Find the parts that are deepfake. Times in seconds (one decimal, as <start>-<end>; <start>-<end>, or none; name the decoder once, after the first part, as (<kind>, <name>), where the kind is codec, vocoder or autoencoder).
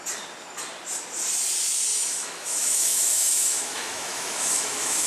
1.9-5.1 (autoencoder, DAC-VAE)